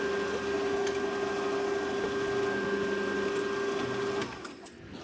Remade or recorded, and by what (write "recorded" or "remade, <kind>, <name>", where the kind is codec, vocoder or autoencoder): recorded